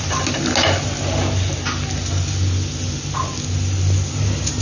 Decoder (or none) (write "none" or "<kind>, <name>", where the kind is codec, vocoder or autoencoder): none